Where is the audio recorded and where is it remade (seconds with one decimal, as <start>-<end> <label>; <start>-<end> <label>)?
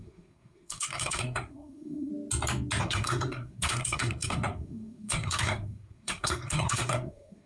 0.0-2.1 remade; 2.1-2.8 recorded; 2.8-7.5 remade